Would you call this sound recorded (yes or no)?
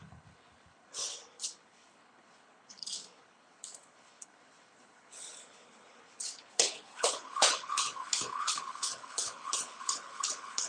no